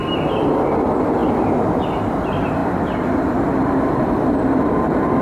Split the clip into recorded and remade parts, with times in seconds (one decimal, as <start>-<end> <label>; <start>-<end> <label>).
0.0-1.2 recorded; 1.2-1.8 remade; 1.8-2.6 recorded; 2.6-5.2 remade